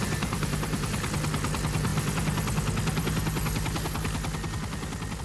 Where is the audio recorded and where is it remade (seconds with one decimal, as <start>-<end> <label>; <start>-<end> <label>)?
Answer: 0.0-5.2 recorded